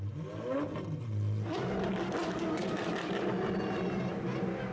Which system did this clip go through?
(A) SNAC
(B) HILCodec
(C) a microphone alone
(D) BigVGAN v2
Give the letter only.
C